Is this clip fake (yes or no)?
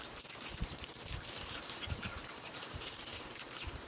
yes